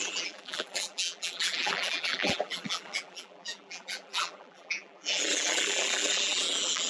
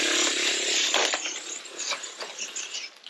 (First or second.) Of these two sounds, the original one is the second